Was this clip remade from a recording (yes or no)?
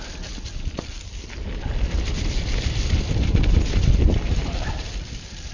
no